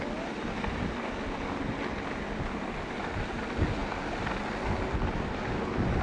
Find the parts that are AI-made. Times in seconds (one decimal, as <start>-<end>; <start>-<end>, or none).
none